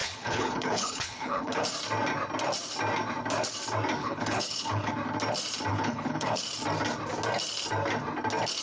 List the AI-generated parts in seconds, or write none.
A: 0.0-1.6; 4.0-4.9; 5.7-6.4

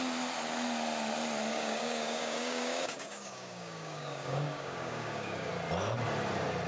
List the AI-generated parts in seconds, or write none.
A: 1.5-5.5